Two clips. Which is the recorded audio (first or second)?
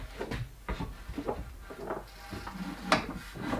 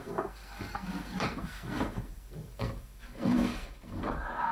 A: first